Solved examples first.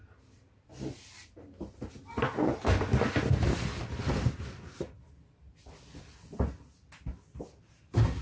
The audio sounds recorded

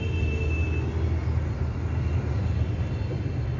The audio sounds recorded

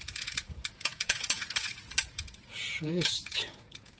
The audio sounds remade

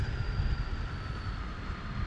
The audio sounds recorded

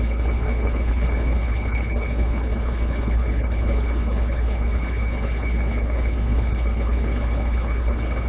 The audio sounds remade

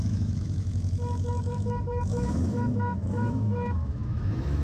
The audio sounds remade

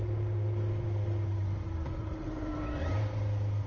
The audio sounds recorded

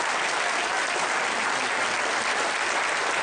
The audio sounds recorded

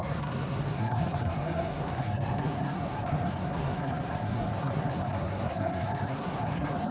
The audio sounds remade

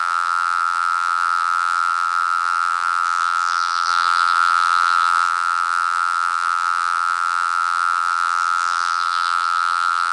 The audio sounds remade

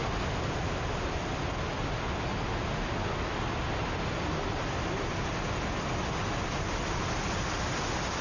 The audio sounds recorded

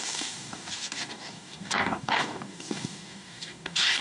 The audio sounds remade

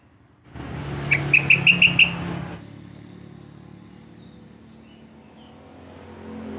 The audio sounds recorded